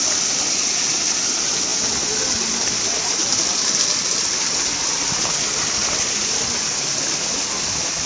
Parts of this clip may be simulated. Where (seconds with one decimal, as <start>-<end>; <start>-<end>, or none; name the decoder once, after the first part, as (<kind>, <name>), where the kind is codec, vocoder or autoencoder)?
none